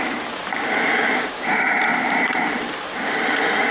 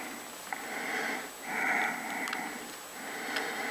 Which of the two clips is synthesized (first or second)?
first